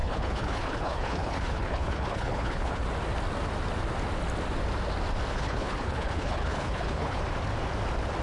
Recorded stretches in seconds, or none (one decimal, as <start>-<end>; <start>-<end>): 2.8-5.3; 7.2-8.2